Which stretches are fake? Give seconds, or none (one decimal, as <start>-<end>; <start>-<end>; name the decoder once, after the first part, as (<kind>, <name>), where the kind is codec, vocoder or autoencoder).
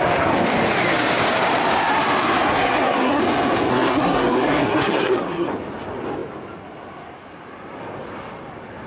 2.5-3.2 (codec, SNAC); 3.7-5.5